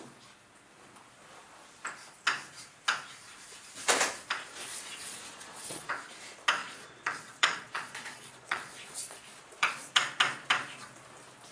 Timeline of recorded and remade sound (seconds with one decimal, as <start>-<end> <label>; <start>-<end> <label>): 0.0-4.6 recorded; 4.6-5.9 remade; 5.9-6.6 recorded; 6.6-9.9 remade; 9.9-11.5 recorded